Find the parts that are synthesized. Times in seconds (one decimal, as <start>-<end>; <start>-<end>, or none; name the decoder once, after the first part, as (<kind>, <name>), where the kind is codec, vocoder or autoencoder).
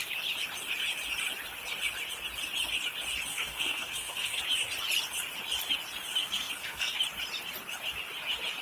3.3-4.4 (codec, SNAC); 6.2-6.9